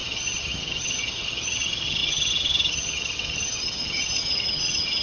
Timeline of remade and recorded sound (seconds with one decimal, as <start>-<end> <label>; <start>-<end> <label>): 0.0-5.0 remade